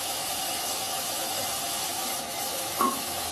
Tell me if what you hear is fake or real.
fake